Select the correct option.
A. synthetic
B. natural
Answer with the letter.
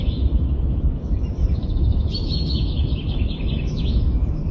A